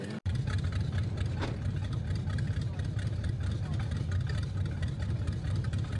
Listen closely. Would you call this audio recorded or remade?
recorded